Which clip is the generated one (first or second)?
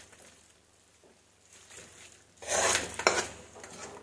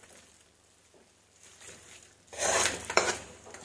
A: second